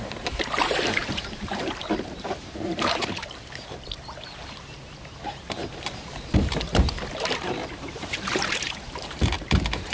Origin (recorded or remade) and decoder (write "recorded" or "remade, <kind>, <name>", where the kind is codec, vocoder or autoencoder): remade, vocoder, BigVGAN v2